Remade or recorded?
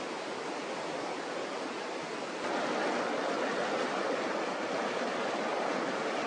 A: recorded